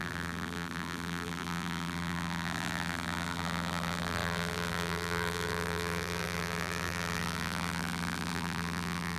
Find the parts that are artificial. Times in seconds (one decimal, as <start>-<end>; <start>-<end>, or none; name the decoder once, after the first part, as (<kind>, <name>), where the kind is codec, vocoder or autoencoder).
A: 0.0-9.2 (vocoder, BigVGAN v2)